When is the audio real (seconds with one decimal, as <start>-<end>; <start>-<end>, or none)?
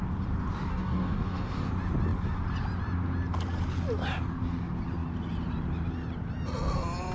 0.0-0.7; 1.7-7.1